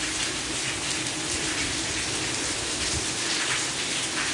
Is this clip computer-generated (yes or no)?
no